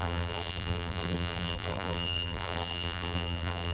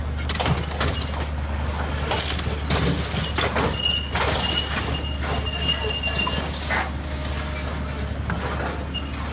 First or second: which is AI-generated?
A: first